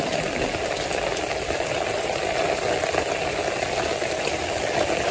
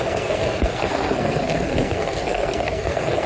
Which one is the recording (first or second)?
first